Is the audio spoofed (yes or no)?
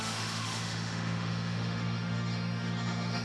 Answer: yes